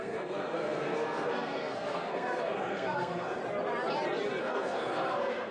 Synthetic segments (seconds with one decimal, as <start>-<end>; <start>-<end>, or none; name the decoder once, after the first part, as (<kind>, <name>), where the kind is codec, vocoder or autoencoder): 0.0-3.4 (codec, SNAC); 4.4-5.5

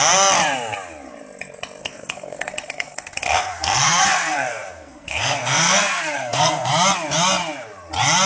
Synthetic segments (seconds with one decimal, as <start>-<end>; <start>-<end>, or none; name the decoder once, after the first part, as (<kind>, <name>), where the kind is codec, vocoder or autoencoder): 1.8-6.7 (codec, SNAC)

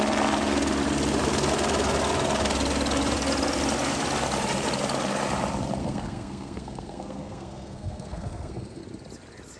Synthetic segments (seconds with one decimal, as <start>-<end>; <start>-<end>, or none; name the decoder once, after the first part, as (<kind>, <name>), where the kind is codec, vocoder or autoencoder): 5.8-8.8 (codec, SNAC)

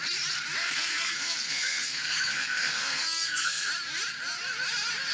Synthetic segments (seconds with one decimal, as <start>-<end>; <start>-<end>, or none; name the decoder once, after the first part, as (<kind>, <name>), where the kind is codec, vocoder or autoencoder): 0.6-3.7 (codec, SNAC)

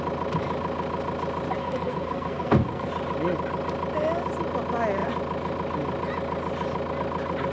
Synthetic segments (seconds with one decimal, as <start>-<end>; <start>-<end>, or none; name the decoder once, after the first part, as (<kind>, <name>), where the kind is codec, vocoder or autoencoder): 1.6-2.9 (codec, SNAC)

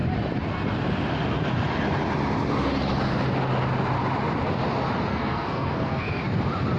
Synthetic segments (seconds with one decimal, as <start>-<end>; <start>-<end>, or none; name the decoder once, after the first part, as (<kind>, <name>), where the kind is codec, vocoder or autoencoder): 5.1-6.2 (codec, SNAC)

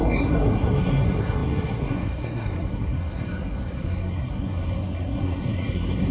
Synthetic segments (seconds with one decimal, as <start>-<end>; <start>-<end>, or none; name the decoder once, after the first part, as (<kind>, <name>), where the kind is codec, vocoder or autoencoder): 0.0-6.1 (codec, SNAC)